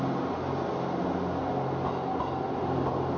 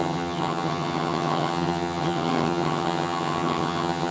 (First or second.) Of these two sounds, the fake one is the second